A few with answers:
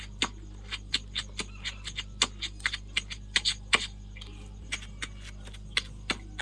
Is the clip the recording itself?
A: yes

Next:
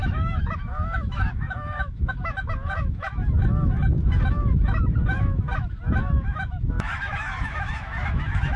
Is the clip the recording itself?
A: no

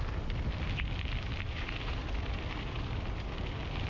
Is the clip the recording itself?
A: yes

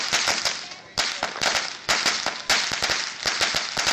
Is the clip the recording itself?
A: yes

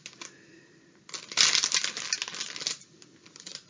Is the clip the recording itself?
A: yes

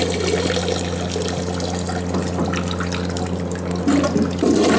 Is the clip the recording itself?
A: yes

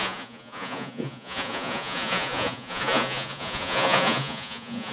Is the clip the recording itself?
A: no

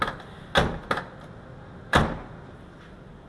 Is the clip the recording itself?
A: yes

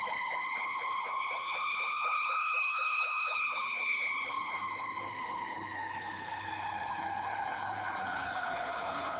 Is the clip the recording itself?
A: no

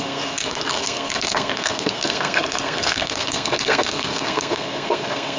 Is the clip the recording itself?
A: no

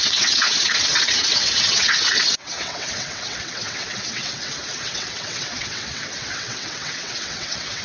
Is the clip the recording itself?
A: no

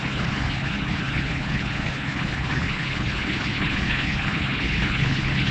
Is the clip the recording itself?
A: no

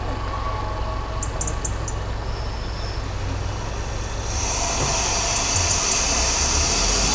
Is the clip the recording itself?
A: yes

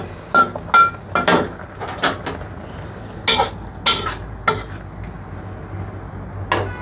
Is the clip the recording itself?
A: yes